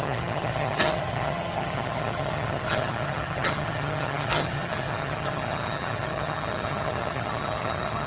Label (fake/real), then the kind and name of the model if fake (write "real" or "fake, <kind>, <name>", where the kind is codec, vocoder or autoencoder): fake, vocoder, HiFi-GAN